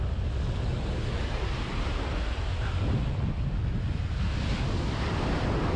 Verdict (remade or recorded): recorded